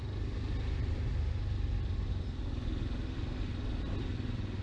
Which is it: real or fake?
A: real